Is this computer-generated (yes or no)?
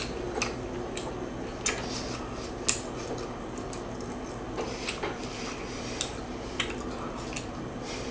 no